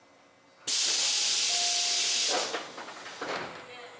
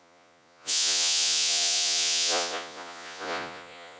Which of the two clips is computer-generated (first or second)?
second